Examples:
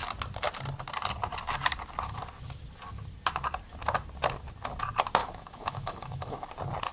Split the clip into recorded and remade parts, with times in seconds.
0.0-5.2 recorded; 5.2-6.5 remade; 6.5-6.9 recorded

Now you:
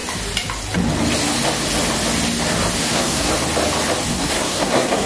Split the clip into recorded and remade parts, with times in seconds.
0.0-2.8 recorded; 2.8-3.3 remade; 3.3-4.1 recorded; 4.1-5.1 remade

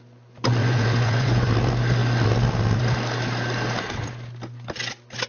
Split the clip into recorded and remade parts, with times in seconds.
0.0-0.6 recorded; 0.6-1.5 remade; 1.5-5.3 recorded

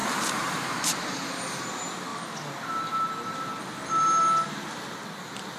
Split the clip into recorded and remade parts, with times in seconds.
0.0-1.6 remade; 1.6-5.6 recorded

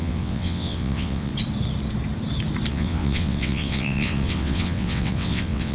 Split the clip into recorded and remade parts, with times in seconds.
0.0-1.3 remade; 1.3-2.7 recorded; 2.7-5.7 remade

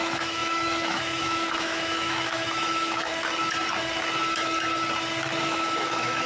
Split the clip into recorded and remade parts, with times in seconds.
0.0-3.1 remade; 3.1-5.4 recorded; 5.4-6.3 remade

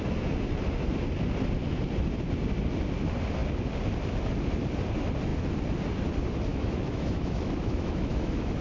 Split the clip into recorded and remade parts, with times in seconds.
0.0-6.5 recorded; 6.5-8.6 remade